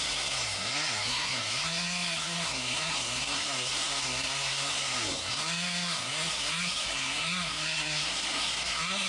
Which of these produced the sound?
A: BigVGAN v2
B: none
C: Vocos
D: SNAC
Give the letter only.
D